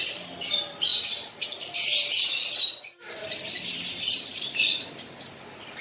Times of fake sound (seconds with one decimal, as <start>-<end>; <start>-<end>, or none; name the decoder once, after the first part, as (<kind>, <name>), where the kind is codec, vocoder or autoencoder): none